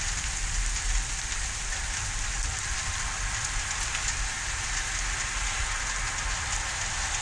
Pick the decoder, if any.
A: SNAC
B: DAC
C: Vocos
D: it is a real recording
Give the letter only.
D